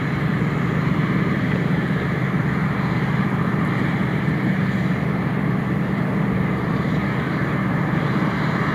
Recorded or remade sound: remade